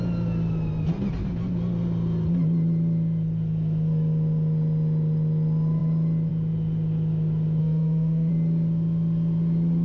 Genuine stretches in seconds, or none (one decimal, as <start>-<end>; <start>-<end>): 0.0-7.6; 8.3-9.8